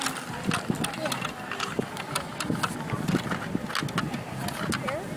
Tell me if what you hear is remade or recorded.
recorded